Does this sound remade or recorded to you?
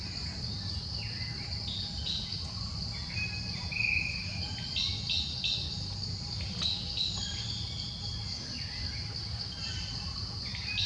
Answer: recorded